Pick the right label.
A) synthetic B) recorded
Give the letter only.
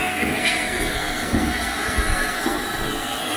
A